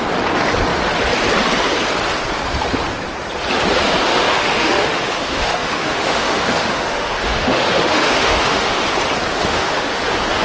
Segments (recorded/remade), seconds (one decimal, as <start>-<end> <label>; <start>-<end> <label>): 0.0-4.1 recorded; 4.1-8.8 remade; 8.8-9.3 recorded; 9.3-10.0 remade; 10.0-10.4 recorded